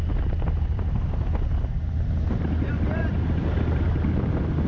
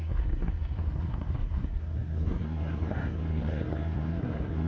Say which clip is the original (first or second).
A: first